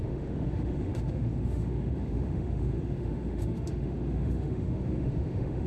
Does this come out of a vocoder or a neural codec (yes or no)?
yes